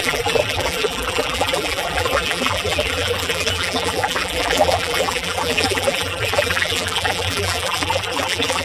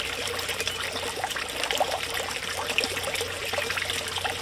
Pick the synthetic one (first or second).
first